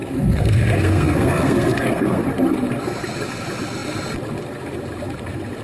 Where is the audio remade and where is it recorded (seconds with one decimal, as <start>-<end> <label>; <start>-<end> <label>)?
0.0-2.2 remade; 2.2-5.6 recorded